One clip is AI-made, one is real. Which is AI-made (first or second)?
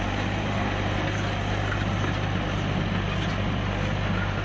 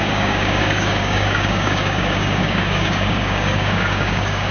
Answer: second